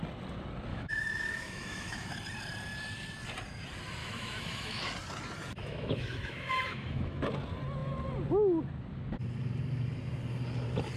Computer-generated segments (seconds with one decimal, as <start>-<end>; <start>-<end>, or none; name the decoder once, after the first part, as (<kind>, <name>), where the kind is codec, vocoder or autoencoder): 0.7-2.1 (autoencoder, DAC-VAE); 4.0-4.8; 5.6-7.2